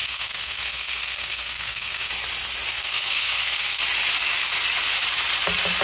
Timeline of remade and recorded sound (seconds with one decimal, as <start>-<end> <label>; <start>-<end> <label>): 0.0-2.1 remade; 2.1-2.7 recorded; 2.7-3.8 remade; 3.8-5.8 recorded